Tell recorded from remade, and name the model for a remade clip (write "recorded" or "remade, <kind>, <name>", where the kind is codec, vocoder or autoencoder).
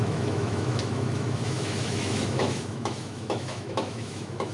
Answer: remade, autoencoder, DAC-VAE